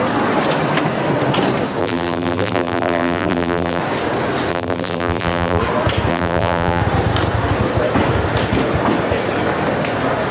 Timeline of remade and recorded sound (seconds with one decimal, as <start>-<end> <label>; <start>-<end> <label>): 0.0-1.8 recorded; 1.8-3.8 remade; 3.8-4.5 recorded; 4.5-5.6 remade; 5.6-6.1 recorded; 6.1-6.8 remade; 6.8-10.3 recorded